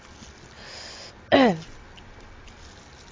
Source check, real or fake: real